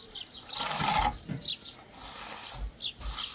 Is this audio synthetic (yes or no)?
no